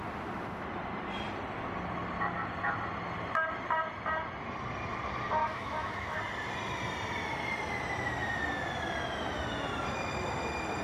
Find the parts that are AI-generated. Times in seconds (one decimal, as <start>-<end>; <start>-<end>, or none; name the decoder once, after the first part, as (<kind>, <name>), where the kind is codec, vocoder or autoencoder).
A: 5.4-6.2 (autoencoder, DAC-VAE)